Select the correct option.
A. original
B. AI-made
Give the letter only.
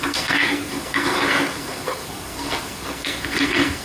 B